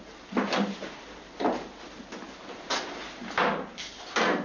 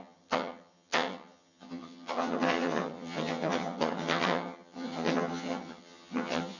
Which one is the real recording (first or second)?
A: first